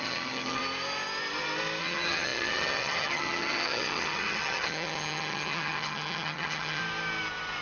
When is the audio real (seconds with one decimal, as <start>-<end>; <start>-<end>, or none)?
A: 0.6-1.8; 6.8-7.6